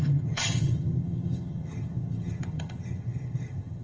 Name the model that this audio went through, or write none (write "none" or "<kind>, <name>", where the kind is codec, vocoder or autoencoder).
vocoder, HiFi-GAN